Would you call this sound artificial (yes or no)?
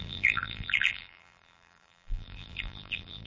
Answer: yes